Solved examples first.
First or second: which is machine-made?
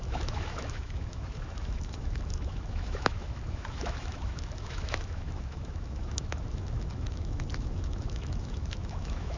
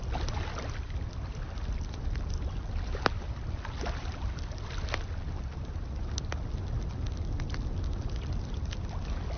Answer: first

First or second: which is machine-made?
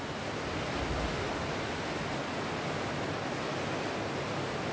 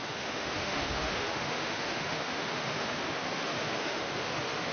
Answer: second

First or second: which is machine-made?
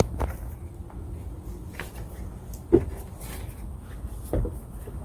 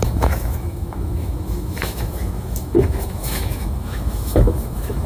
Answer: second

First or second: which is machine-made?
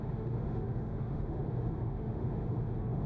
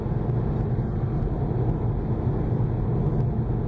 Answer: first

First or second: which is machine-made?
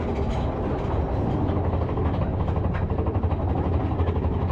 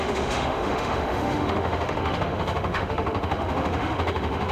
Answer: second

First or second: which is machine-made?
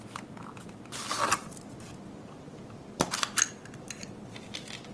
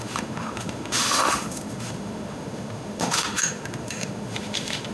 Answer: second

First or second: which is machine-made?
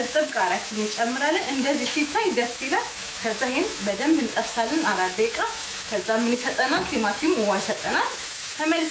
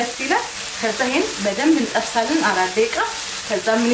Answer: first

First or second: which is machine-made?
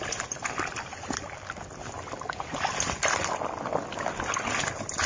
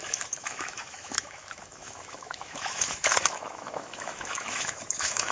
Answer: second